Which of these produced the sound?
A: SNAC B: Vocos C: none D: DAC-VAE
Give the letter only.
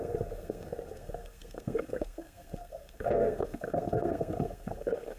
A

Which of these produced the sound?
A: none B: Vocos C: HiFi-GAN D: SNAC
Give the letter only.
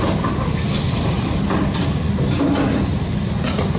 A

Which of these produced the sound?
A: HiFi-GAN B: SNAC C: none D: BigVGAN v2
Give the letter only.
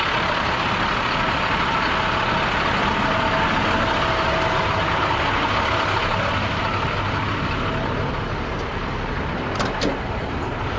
C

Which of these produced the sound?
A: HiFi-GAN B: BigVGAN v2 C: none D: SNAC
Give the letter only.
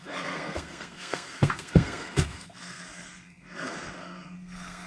D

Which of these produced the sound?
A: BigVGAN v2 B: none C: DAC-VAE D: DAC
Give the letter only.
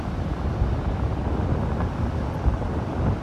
B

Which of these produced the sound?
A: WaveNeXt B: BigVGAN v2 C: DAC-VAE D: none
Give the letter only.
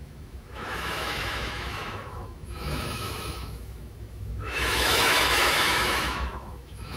C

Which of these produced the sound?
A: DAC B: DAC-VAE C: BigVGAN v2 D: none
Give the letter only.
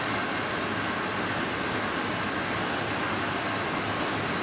D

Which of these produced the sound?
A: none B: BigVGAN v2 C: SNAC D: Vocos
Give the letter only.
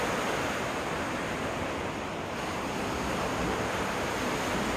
A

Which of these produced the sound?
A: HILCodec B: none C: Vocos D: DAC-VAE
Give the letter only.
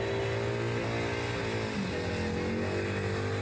B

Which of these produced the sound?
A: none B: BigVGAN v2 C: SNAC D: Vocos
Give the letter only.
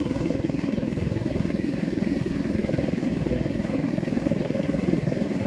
C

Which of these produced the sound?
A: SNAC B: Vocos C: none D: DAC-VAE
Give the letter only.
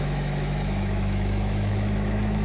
D